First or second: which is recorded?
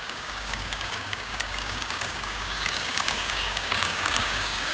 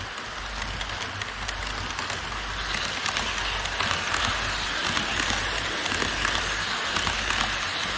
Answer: second